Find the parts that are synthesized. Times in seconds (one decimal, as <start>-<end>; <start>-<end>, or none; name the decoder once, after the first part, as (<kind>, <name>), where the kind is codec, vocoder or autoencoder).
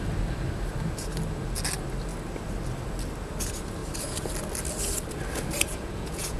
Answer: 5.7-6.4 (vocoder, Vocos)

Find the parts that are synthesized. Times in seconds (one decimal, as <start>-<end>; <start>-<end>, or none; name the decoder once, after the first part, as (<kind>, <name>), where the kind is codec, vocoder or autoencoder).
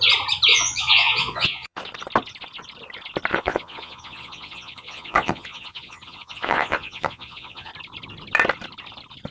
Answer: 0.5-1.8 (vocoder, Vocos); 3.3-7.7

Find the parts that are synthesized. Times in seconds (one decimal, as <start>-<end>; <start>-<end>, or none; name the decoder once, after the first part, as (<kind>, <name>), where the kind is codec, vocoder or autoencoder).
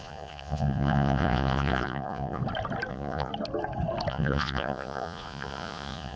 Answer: 0.0-2.4 (vocoder, Vocos); 2.9-3.3; 4.1-6.2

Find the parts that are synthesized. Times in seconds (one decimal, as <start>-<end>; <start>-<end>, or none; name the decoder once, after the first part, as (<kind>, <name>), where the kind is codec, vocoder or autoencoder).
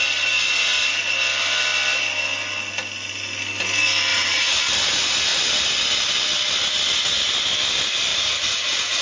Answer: 4.1-4.6 (vocoder, Vocos); 8.1-9.0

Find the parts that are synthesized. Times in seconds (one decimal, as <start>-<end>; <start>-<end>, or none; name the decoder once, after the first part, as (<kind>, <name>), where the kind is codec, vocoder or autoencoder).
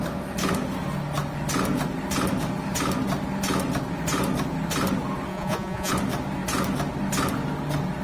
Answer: 5.3-5.9 (vocoder, Vocos)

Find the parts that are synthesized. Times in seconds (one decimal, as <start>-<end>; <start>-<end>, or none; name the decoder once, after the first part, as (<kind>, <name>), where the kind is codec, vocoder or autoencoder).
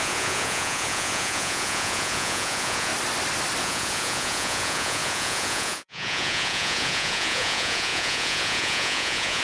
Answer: 0.0-2.9 (vocoder, Vocos); 3.6-9.4